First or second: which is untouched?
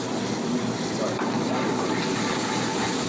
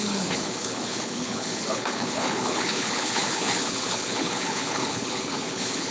first